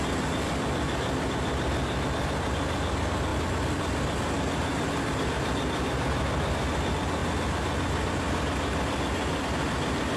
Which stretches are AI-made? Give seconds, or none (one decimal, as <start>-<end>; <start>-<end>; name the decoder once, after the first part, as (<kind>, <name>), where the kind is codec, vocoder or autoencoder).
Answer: none